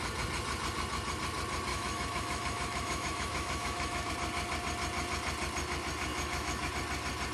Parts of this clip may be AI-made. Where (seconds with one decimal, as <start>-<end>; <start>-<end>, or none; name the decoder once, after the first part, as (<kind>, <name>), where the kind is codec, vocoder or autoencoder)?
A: 1.7-4.1 (autoencoder, DAC-VAE); 6.1-6.7